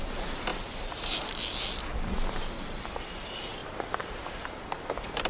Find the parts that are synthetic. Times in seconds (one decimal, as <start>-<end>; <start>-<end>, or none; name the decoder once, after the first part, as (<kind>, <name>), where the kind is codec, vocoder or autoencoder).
0.5-1.8 (vocoder, BigVGAN v2); 3.6-5.3